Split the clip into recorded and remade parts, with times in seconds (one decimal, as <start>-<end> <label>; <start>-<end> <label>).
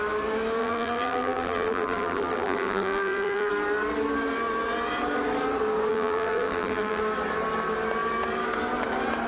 0.0-0.6 recorded; 0.6-3.5 remade; 3.5-5.9 recorded; 5.9-7.0 remade; 7.0-9.3 recorded